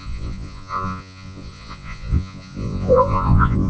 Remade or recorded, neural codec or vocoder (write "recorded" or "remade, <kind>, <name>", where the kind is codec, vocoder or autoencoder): remade, vocoder, Vocos